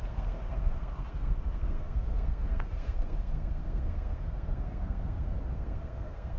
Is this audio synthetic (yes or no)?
yes